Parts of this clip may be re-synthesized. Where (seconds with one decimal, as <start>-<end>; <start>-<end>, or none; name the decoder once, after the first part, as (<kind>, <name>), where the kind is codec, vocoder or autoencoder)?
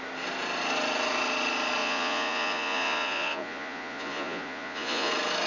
1.8-5.1 (vocoder, Vocos)